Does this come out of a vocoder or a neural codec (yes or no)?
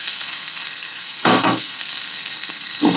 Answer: yes